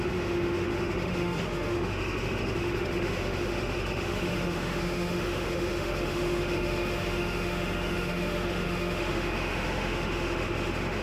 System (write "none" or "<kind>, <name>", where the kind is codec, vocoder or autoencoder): autoencoder, DAC-VAE